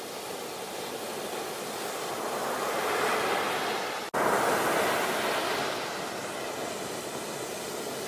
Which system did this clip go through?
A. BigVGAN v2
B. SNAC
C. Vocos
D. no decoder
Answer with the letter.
D